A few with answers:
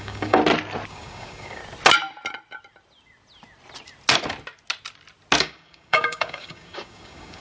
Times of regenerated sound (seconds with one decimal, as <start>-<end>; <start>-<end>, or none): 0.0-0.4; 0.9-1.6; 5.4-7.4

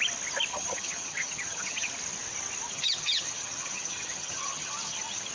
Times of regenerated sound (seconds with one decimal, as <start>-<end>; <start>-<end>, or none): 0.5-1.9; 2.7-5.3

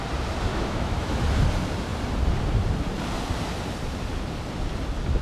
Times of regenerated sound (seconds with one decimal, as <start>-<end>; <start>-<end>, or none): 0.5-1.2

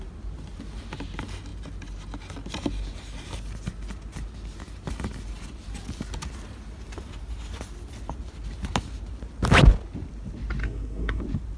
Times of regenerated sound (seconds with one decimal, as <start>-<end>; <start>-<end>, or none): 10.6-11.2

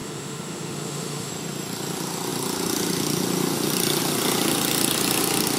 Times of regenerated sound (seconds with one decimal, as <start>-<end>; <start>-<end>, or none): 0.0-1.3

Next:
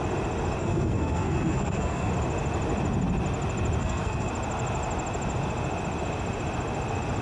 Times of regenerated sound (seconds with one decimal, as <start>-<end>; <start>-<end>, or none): 0.6-2.1; 3.8-4.3